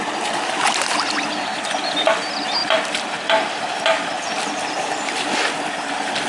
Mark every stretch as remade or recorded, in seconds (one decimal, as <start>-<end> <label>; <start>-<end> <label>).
0.0-2.6 recorded; 2.6-3.6 remade; 3.6-6.3 recorded